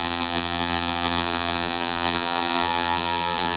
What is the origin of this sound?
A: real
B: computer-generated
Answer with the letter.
B